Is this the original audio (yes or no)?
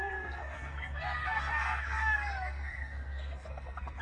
no